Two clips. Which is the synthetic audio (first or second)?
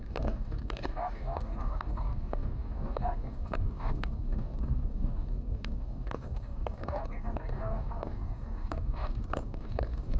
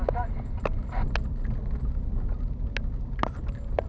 first